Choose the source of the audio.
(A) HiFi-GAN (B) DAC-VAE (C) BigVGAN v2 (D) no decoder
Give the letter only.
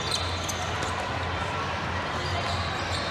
D